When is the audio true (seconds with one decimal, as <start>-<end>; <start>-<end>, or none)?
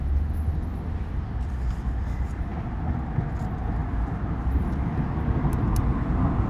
0.0-6.5